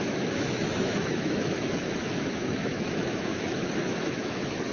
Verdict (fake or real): fake